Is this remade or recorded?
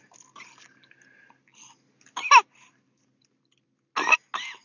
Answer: recorded